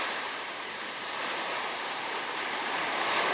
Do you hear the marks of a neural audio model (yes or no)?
yes